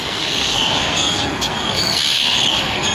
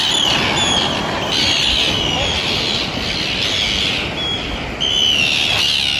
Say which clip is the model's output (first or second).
first